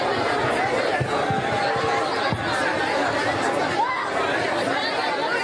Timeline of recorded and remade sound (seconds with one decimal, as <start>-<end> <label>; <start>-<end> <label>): 0.0-5.4 recorded